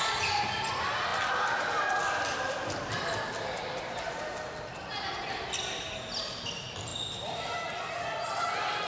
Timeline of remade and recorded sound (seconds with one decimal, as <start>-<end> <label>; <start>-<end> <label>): 0.0-8.9 recorded